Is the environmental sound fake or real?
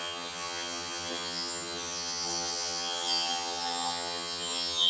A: fake